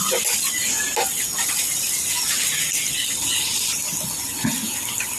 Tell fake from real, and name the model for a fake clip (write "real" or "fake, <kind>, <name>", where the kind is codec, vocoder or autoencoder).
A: real